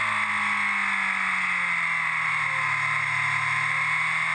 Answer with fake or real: real